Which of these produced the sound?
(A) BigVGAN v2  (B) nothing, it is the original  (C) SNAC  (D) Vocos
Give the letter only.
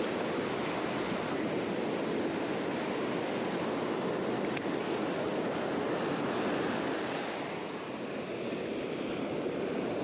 B